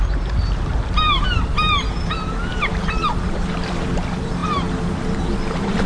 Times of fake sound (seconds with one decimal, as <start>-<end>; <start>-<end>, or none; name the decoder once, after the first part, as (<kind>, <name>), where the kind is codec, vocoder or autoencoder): 0.0-5.9 (vocoder, BigVGAN v2)